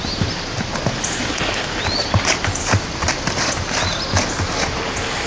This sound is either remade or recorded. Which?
recorded